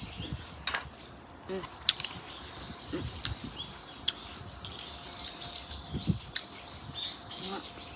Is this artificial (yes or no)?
no